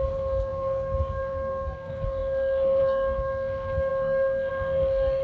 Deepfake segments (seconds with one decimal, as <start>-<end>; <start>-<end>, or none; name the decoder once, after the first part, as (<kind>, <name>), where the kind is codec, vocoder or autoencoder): 0.0-5.2 (codec, SNAC)